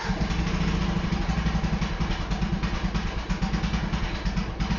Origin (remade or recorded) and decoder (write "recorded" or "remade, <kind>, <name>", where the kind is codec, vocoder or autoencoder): recorded